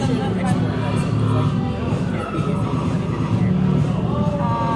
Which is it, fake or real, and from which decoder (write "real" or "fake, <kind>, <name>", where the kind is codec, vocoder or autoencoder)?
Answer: real